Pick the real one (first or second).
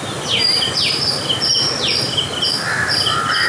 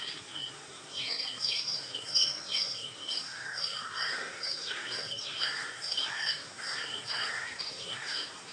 first